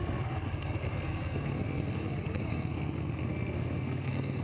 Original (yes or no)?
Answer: no